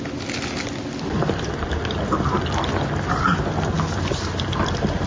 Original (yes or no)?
yes